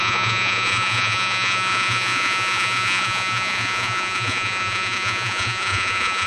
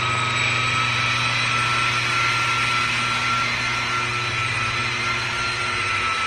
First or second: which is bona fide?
second